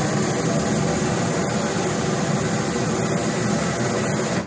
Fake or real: real